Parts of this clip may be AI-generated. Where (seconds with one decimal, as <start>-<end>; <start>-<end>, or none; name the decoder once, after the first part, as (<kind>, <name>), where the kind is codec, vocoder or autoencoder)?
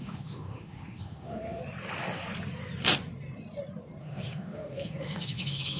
0.0-1.6 (autoencoder, DAC-VAE); 4.0-5.8